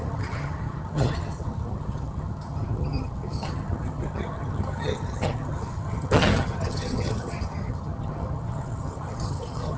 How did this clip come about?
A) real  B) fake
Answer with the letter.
B